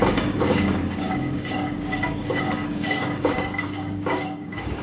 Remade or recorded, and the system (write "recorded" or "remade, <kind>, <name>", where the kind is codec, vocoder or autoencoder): remade, codec, DAC